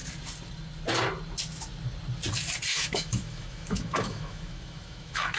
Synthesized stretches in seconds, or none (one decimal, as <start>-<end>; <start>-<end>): 2.7-5.4